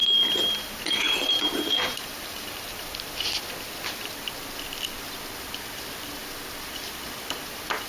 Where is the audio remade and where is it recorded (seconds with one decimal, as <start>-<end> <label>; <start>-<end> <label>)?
0.0-2.8 remade; 2.8-7.9 recorded

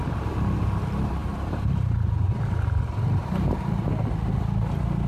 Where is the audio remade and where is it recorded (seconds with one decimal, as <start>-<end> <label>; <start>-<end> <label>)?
0.0-1.2 recorded; 1.2-3.9 remade; 3.9-5.1 recorded

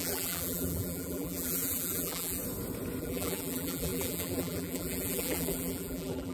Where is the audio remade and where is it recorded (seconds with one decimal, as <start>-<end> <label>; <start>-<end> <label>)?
0.0-2.4 remade; 2.4-3.0 recorded; 3.0-6.3 remade

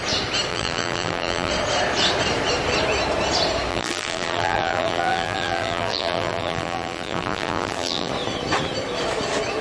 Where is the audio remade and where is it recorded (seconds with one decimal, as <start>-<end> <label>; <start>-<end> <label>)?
0.0-0.5 recorded; 0.5-1.5 remade; 1.5-3.7 recorded; 3.7-8.1 remade; 8.1-9.6 recorded